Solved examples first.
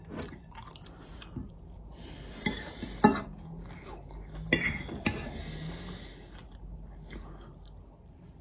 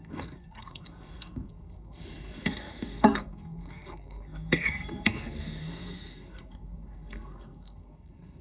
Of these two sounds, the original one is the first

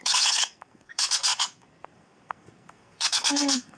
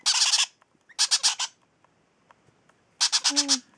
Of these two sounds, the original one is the second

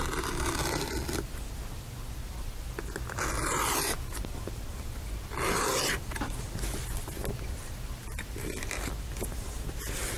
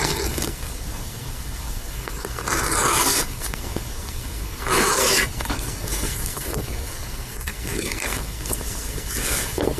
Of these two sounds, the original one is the first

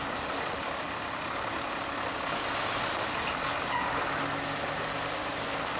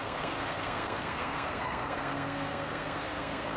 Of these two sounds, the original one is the first